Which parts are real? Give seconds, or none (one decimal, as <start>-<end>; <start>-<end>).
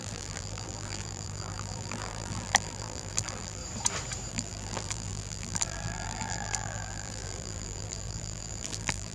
3.6-4.3